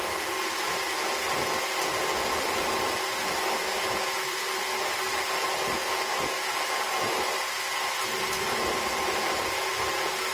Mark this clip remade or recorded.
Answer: recorded